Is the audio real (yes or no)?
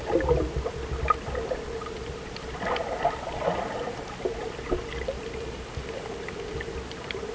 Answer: yes